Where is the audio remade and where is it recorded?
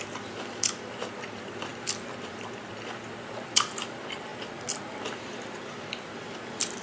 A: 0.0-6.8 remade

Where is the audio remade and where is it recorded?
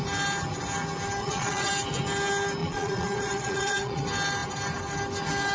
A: 0.0-1.2 recorded; 1.2-1.7 remade; 1.7-2.6 recorded; 2.6-4.0 remade; 4.0-5.5 recorded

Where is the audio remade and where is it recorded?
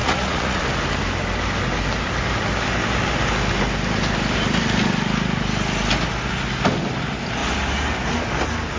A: 0.0-0.6 remade; 0.6-8.8 recorded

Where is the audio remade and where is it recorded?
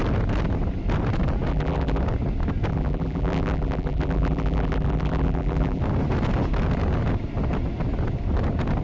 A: 0.0-1.5 recorded; 1.5-2.0 remade; 2.0-2.7 recorded; 2.7-5.8 remade; 5.8-8.8 recorded